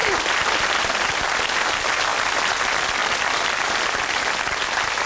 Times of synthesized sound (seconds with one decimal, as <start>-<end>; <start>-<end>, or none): 0.0-1.2; 3.0-4.0

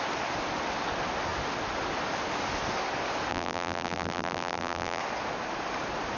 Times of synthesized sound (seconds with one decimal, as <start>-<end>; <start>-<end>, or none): 3.3-5.0

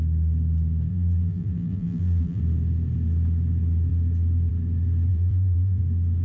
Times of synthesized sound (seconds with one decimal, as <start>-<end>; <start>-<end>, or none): 0.9-2.4; 5.1-5.8

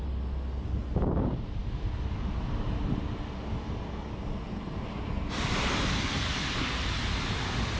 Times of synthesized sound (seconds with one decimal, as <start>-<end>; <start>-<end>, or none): none

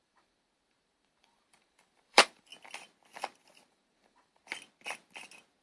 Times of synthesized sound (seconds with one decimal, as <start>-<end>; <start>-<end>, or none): 0.0-2.5; 3.7-4.4

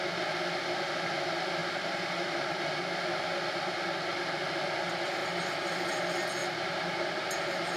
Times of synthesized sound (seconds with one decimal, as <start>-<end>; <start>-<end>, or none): 1.6-2.6; 5.2-5.9; 6.4-7.8

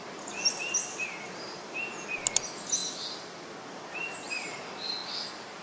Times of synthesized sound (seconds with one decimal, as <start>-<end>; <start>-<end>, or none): 0.8-1.8; 2.8-4.5